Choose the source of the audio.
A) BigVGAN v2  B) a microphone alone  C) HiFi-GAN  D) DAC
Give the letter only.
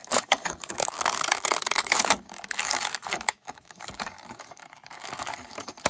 D